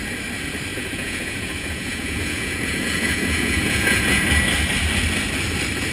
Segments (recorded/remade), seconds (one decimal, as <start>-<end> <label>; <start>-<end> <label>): 0.0-0.7 recorded; 0.7-4.2 remade; 4.2-5.9 recorded